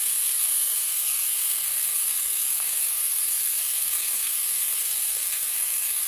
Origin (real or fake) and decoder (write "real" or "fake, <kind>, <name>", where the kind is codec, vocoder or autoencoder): fake, codec, SNAC